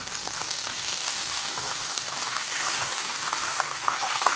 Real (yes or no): no